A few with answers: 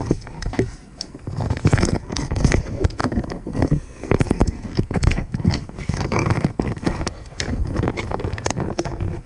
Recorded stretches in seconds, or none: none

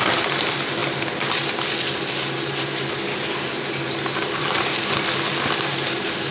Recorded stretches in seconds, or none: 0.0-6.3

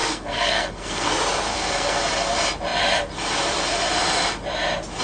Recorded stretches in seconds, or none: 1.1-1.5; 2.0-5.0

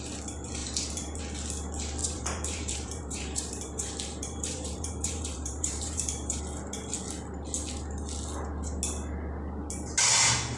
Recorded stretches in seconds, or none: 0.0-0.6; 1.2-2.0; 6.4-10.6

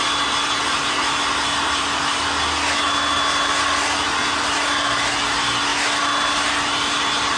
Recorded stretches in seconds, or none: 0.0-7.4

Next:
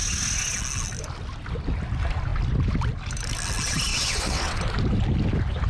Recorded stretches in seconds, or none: 0.0-3.9; 4.6-5.7

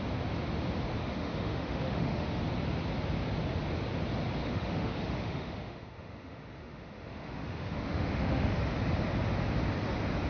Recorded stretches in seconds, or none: 0.0-1.0; 2.4-4.4; 8.6-10.3